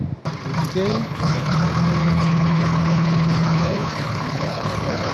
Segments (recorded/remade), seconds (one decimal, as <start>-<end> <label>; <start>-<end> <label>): 0.0-0.9 recorded; 0.9-1.6 remade; 1.6-2.0 recorded; 2.0-5.1 remade